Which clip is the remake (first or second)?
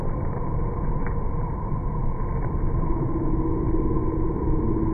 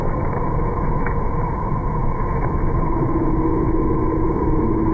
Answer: second